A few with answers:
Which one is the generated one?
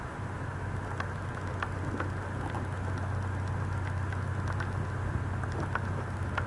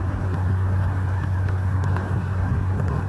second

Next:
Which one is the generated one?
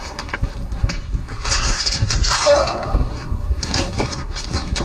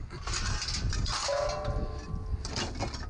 first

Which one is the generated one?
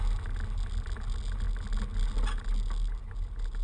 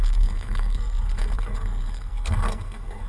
second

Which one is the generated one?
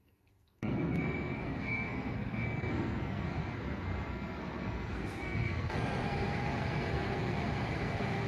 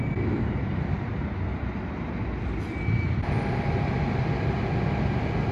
first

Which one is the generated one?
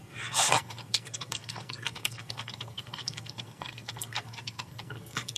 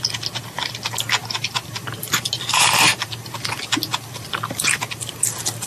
first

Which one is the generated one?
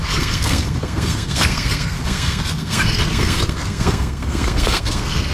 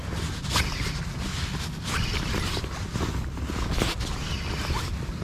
first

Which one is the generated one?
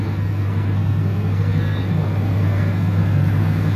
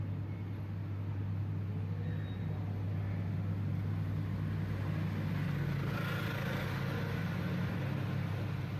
first